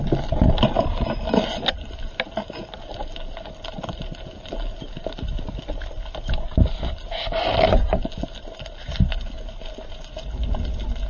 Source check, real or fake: real